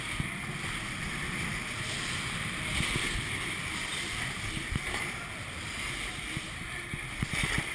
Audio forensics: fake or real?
real